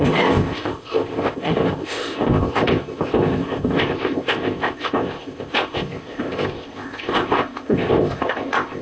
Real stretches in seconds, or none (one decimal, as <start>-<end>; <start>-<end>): none